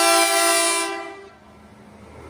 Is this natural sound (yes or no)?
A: yes